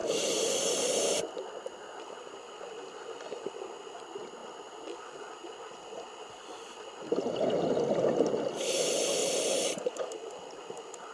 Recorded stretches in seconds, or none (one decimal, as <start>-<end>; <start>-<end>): 1.2-9.2; 10.2-11.1